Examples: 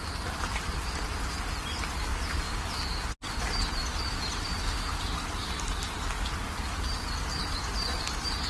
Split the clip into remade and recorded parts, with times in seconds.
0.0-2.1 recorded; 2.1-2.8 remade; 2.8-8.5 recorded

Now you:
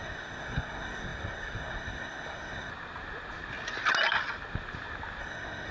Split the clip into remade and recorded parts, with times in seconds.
0.0-2.7 remade; 2.7-5.2 recorded; 5.2-5.7 remade